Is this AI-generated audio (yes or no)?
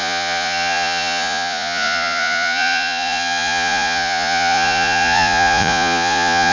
yes